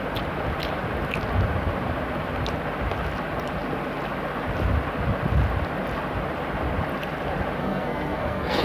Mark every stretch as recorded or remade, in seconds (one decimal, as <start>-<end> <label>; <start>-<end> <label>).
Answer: 0.0-7.6 recorded; 7.6-8.6 remade

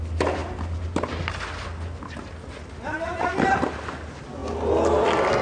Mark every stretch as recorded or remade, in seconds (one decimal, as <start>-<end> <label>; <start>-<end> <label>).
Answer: 0.0-5.4 recorded

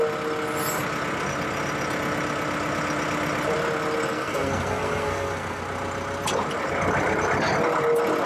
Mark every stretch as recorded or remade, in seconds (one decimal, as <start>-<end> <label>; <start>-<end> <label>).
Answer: 0.0-4.1 recorded; 4.1-5.6 remade; 5.6-8.3 recorded

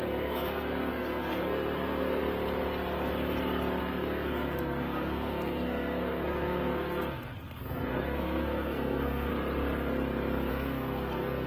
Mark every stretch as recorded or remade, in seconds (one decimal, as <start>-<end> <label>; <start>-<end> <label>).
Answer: 0.0-2.2 remade; 2.2-3.8 recorded; 3.8-9.3 remade; 9.3-10.5 recorded; 10.5-11.5 remade

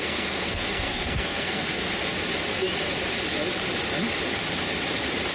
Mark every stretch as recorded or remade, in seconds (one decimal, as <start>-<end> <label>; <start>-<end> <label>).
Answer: 0.0-1.8 remade; 1.8-5.3 recorded

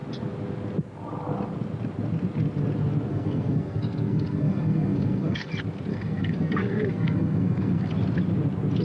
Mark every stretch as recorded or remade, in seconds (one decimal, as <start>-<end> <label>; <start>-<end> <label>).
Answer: 0.0-3.1 recorded; 3.1-5.5 remade; 5.5-5.9 recorded; 5.9-7.9 remade; 7.9-8.8 recorded